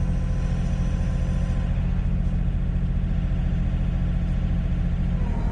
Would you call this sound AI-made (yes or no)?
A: no